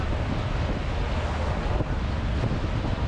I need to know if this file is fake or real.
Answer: real